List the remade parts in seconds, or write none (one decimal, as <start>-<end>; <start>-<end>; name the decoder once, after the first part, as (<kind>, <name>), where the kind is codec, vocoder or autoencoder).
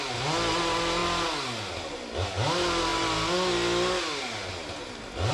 none